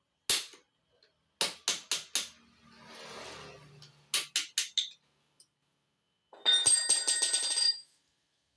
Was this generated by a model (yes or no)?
no